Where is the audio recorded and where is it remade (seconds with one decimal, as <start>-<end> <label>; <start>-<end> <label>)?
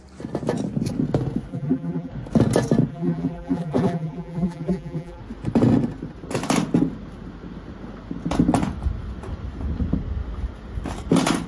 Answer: 0.0-1.5 recorded; 1.5-2.1 remade; 2.1-2.9 recorded; 2.9-5.2 remade; 5.2-11.5 recorded